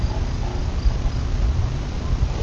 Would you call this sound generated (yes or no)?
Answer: no